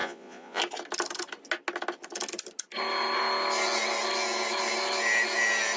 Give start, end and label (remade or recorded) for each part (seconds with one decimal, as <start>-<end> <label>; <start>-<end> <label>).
0.0-0.6 remade; 0.6-5.8 recorded